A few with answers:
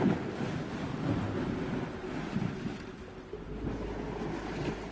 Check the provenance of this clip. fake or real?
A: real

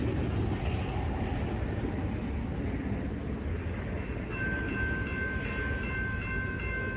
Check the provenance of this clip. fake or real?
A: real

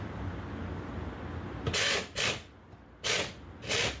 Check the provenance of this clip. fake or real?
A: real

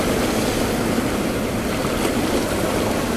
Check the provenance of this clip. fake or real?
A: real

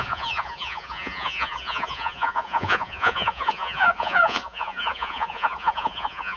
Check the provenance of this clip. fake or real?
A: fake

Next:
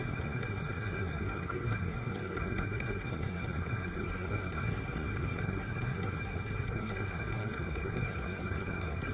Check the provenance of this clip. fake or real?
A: fake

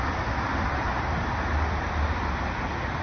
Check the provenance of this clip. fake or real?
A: real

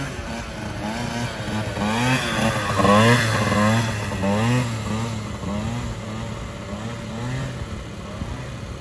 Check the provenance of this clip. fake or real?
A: real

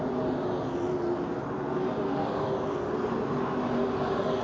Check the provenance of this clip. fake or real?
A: real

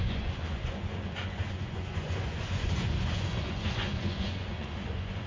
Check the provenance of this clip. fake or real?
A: fake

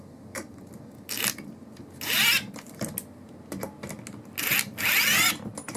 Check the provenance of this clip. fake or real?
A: real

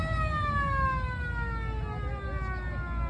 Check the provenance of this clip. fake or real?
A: real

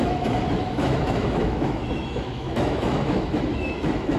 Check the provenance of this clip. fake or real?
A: fake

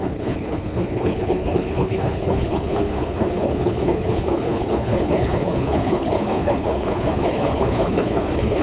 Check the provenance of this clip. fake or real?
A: fake